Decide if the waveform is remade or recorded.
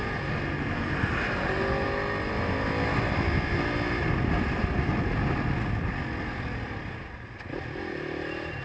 recorded